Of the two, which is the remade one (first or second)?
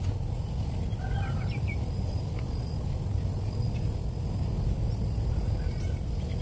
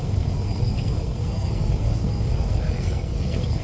second